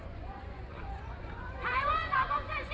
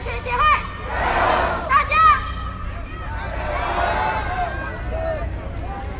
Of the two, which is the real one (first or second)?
second